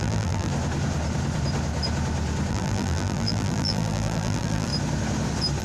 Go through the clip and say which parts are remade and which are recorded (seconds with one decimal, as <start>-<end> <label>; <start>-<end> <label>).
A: 0.0-0.5 remade; 0.5-2.5 recorded; 2.5-4.7 remade; 4.7-5.6 recorded